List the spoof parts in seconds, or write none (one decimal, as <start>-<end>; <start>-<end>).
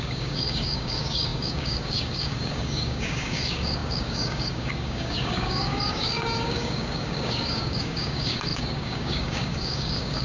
0.0-10.2